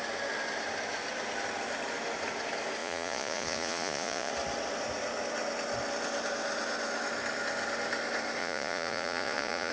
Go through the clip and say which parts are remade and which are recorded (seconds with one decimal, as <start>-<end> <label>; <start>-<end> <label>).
0.0-2.8 recorded; 2.8-4.3 remade; 4.3-8.4 recorded; 8.4-9.7 remade